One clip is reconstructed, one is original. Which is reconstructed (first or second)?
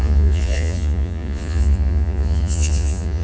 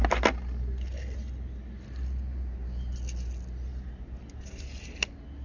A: first